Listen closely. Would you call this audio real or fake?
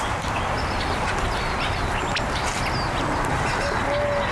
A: real